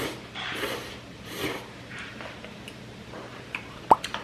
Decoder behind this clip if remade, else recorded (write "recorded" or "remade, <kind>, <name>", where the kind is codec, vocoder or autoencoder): remade, vocoder, BigVGAN v2